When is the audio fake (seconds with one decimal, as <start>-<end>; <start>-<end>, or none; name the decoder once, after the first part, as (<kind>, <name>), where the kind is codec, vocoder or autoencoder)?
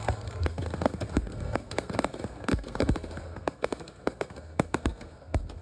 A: 0.0-5.6 (codec, SNAC)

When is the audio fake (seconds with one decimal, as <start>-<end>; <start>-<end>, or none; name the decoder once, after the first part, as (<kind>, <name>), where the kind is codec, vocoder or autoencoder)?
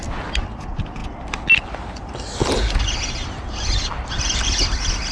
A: none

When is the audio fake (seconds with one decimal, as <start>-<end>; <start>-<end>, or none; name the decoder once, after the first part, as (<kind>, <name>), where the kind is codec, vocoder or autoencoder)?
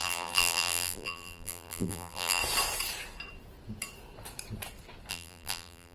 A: 0.0-2.4 (vocoder, BigVGAN v2); 5.1-5.9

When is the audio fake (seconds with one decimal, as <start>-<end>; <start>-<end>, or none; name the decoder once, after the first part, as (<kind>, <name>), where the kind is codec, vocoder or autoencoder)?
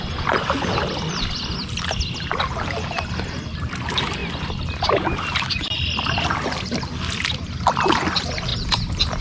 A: 4.2-6.5 (vocoder, BigVGAN v2); 8.5-9.2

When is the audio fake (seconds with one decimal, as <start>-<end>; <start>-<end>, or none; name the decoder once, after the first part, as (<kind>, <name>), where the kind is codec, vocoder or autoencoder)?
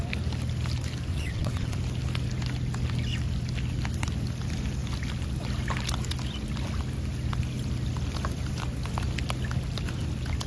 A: 1.1-1.8 (vocoder, WaveNeXt)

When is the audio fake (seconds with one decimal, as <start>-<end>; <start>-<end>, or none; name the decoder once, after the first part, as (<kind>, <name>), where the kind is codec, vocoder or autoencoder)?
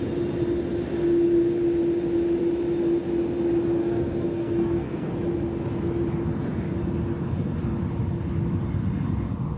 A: 3.8-5.1 (codec, SNAC)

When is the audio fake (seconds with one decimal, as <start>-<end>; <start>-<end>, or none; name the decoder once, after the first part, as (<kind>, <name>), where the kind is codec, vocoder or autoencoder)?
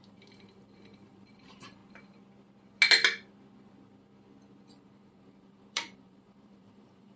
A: 0.0-1.8 (vocoder, BigVGAN v2); 4.7-7.2